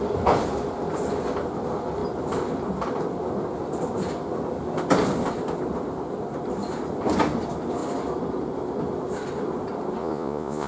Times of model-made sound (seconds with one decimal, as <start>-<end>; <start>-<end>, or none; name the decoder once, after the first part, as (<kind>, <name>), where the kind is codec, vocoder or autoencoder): 10.0-10.7 (vocoder, Vocos)